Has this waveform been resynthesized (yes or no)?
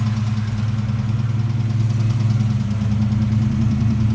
no